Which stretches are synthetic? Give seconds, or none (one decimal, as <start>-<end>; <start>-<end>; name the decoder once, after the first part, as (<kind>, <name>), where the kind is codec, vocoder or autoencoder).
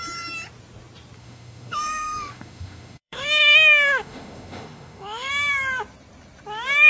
1.2-5.3 (autoencoder, DAC-VAE)